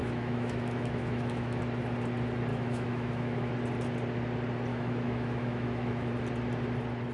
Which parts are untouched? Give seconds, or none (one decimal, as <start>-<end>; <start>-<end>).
1.6-2.5; 3.5-4.7; 6.1-7.1